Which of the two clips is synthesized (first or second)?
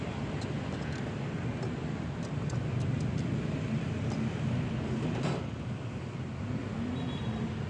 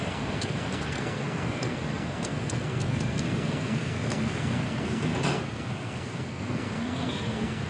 second